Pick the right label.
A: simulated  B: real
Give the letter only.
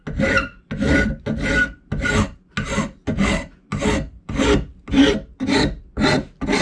B